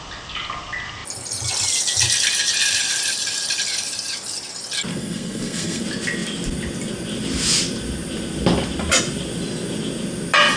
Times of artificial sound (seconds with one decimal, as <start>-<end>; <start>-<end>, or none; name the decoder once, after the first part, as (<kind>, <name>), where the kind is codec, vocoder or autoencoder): 4.9-5.8 (codec, SNAC)